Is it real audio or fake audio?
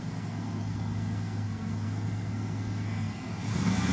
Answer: fake